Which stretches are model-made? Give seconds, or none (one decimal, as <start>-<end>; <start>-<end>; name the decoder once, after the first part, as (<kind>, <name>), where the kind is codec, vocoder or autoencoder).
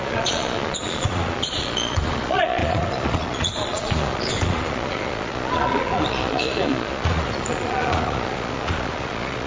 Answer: 0.0-9.5 (vocoder, Vocos)